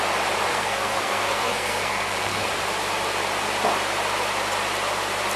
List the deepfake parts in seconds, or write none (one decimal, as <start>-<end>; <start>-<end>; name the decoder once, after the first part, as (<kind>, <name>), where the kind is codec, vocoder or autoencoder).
0.5-2.5 (codec, SNAC)

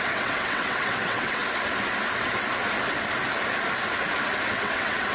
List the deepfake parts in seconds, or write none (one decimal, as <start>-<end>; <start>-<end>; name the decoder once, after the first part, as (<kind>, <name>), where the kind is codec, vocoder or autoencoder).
0.0-1.4 (vocoder, WaveNeXt); 4.5-5.1

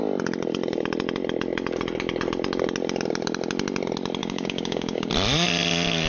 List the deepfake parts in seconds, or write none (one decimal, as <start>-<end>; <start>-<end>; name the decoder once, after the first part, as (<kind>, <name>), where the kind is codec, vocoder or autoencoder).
4.2-5.1 (codec, DAC)